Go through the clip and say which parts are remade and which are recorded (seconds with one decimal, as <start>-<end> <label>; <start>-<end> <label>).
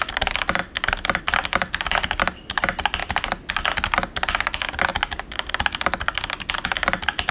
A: 0.0-7.3 recorded